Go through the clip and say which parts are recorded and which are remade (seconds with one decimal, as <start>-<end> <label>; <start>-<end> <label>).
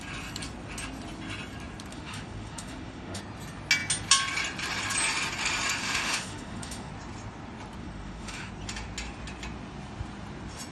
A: 0.0-1.9 recorded; 1.9-3.2 remade; 3.2-5.8 recorded; 5.8-6.9 remade; 6.9-7.8 recorded; 7.8-8.5 remade; 8.5-10.7 recorded